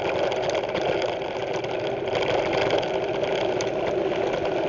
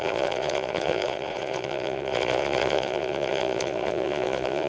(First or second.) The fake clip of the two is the second